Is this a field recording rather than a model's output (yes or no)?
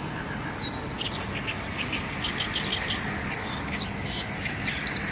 yes